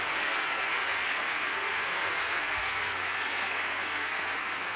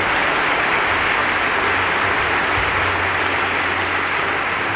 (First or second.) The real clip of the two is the second